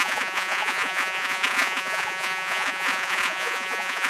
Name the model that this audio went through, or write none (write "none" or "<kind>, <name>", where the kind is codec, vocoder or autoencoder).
vocoder, Vocos